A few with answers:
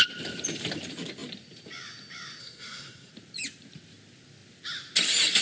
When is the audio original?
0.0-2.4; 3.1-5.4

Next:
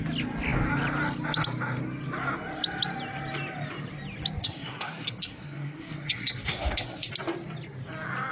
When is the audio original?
0.0-4.4; 7.1-8.3

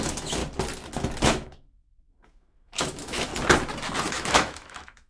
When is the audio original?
0.4-1.2; 3.3-4.1

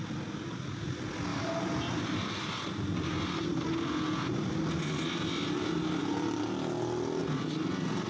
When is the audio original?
0.0-1.3; 2.5-8.1

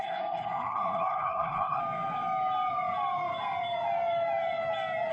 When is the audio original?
1.8-5.1

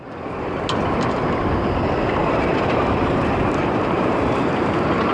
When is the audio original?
0.0-2.2; 4.5-5.1